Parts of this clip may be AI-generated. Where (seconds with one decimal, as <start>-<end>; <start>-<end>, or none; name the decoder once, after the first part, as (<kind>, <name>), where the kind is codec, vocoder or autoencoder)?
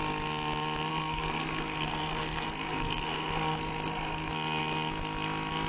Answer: 0.9-4.3 (codec, SNAC)